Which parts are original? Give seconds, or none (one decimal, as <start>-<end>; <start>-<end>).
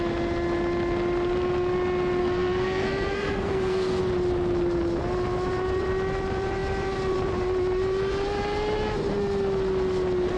0.0-2.2; 4.0-10.4